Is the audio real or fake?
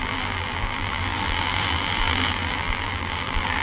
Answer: fake